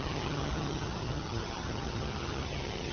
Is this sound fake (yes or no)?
yes